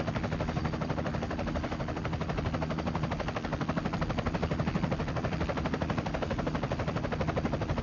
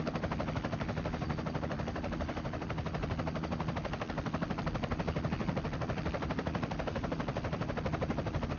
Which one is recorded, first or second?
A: first